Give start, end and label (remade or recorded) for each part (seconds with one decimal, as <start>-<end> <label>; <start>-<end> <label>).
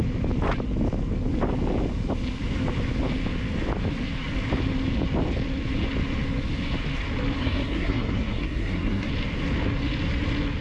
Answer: 0.0-7.4 recorded; 7.4-9.1 remade; 9.1-10.6 recorded